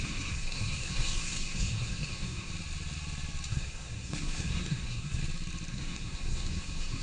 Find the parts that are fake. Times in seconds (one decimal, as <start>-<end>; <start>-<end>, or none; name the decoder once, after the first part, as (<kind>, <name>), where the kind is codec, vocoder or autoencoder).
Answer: 0.0-2.5 (codec, SNAC); 3.5-5.2; 5.7-7.0